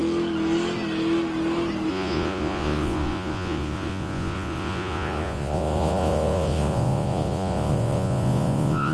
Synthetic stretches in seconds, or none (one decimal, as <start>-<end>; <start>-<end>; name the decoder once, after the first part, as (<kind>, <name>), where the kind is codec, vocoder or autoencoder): 1.9-8.9 (vocoder, Vocos)